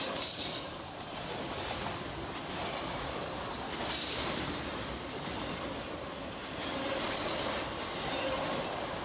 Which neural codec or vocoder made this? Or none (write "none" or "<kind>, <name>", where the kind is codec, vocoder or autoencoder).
none